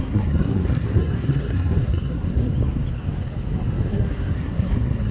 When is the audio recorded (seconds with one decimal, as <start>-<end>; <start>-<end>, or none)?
2.5-3.9